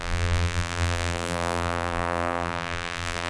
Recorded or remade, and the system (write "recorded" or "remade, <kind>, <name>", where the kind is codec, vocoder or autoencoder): remade, vocoder, BigVGAN v2